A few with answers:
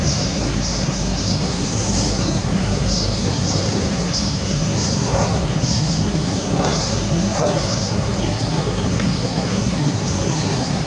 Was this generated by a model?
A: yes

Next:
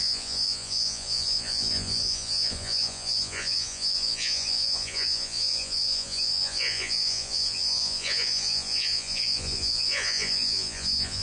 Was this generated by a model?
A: yes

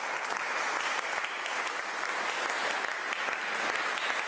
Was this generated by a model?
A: no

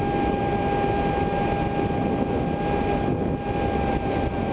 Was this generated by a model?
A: no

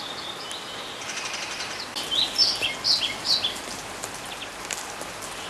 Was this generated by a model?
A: no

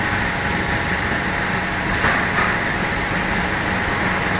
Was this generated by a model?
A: no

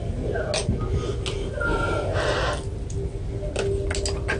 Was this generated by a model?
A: no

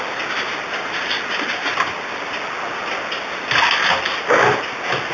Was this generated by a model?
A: no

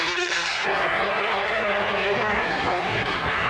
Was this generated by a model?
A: yes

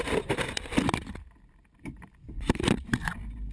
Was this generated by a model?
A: yes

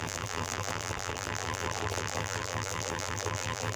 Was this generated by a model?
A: yes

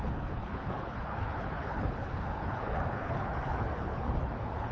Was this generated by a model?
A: yes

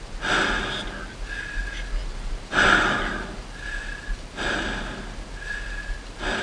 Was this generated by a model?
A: no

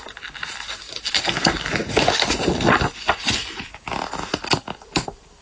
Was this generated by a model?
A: no